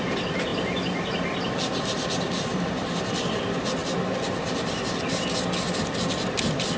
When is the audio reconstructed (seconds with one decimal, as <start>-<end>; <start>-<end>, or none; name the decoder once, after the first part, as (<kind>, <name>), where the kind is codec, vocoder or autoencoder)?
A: none